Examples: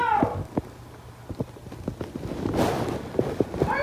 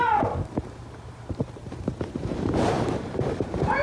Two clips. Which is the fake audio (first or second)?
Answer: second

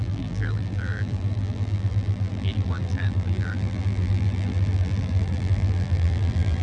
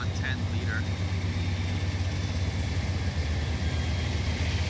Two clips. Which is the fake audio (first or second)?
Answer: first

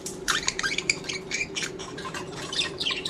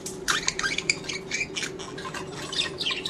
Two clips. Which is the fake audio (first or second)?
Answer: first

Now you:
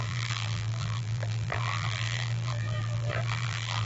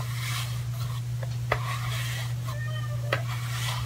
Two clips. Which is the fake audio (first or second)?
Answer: first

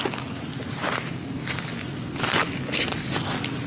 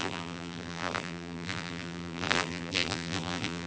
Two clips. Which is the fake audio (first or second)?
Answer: second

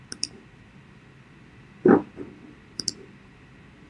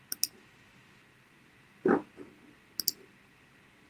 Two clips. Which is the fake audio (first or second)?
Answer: first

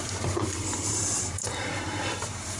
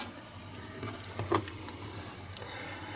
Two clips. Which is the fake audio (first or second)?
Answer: first